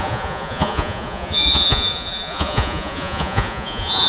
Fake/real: fake